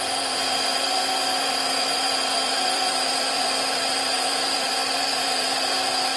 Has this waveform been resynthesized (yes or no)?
yes